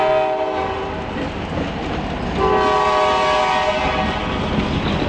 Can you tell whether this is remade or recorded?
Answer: recorded